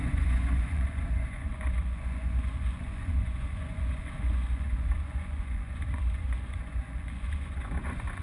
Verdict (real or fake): fake